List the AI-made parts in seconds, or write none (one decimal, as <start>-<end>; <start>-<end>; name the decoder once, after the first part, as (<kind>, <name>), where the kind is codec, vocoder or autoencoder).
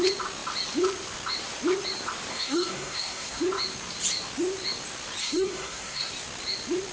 2.3-3.4 (codec, SNAC); 5.2-6.1